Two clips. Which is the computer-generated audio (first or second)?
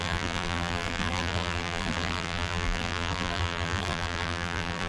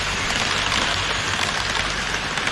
first